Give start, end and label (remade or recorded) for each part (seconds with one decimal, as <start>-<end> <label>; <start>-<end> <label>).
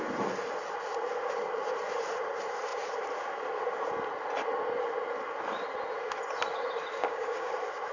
0.0-7.0 recorded; 7.0-7.5 remade; 7.5-7.9 recorded